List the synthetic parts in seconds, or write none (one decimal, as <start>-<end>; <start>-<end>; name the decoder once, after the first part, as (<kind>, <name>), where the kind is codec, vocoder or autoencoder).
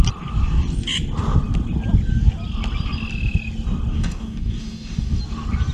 3.9-5.2 (codec, DAC)